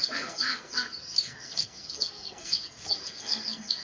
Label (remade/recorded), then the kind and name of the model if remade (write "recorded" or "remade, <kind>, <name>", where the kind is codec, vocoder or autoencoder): remade, codec, SNAC